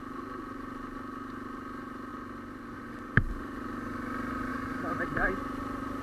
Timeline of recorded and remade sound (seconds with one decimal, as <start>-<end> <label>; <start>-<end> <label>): 0.0-4.5 recorded; 4.5-5.3 remade; 5.3-6.0 recorded